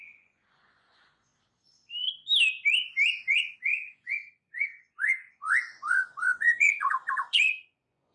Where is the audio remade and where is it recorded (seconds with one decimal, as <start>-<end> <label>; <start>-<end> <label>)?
0.0-1.3 remade; 1.3-3.2 recorded; 3.2-8.1 remade